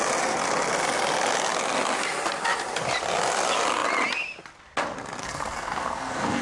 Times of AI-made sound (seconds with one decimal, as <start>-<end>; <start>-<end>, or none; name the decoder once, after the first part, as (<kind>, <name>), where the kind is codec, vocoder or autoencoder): 5.2-6.4 (codec, SNAC)